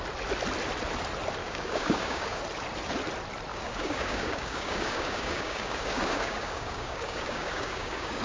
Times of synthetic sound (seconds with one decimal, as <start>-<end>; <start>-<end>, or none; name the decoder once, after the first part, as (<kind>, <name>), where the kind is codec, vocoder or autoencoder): 1.4-2.4 (codec, DAC); 3.5-8.2

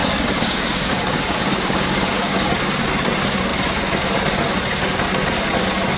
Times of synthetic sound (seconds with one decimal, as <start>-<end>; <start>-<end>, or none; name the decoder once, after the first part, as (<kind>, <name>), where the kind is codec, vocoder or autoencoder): 0.0-2.5 (codec, DAC)